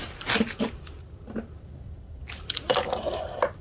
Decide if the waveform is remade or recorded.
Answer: recorded